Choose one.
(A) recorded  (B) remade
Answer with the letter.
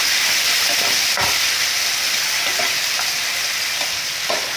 A